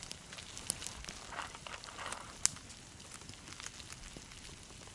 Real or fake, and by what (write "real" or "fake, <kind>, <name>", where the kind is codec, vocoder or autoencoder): real